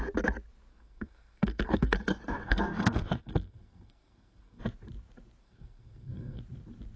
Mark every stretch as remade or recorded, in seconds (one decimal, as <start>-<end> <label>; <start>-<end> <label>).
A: 0.0-0.7 recorded; 0.7-4.6 remade; 4.6-5.4 recorded; 5.4-6.4 remade; 6.4-7.0 recorded

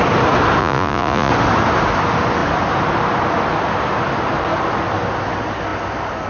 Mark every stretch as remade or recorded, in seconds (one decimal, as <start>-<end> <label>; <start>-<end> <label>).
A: 0.0-0.6 recorded; 0.6-1.3 remade; 1.3-6.3 recorded

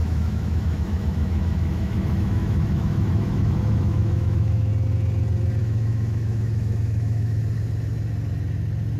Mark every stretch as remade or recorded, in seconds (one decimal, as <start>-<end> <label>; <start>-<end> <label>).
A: 0.0-4.7 remade; 4.7-5.6 recorded; 5.6-7.4 remade; 7.4-9.0 recorded

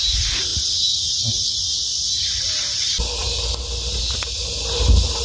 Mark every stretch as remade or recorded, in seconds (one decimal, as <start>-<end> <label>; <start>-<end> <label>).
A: 0.0-5.2 recorded

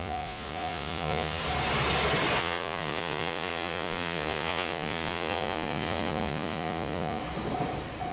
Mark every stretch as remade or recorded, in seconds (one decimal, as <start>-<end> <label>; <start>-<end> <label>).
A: 0.0-1.4 remade; 1.4-2.4 recorded; 2.4-7.2 remade; 7.2-8.1 recorded